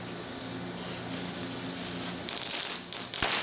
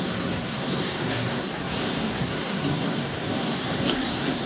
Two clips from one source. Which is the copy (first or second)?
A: second